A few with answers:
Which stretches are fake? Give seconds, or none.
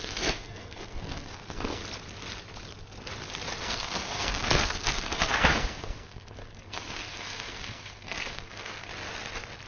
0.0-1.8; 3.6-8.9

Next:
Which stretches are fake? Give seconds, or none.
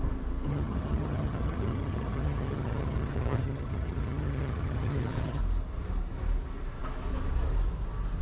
0.5-5.4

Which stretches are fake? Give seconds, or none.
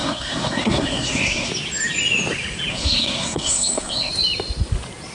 0.0-1.5; 2.7-4.1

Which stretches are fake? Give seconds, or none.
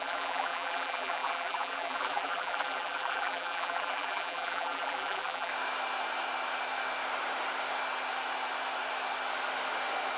0.0-5.5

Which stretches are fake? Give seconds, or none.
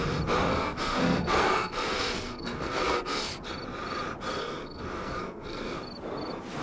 0.5-3.3; 4.4-5.8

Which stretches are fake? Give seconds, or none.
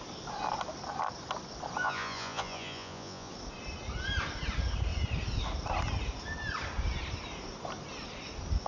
1.8-3.3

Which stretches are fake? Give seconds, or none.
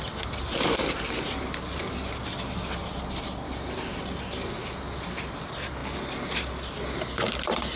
none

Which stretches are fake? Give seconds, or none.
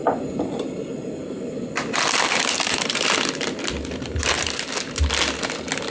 none